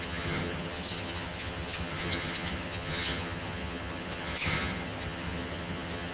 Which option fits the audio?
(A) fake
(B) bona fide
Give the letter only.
A